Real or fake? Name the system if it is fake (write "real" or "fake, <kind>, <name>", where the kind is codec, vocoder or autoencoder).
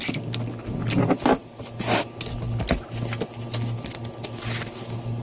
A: real